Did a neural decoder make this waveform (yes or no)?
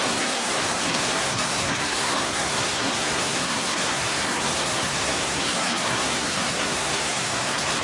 yes